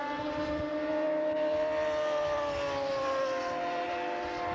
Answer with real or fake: real